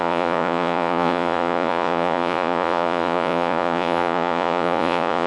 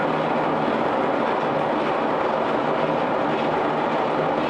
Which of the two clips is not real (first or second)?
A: first